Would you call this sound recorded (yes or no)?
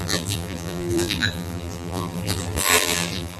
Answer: no